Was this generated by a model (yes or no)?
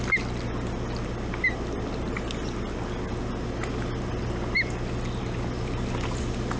no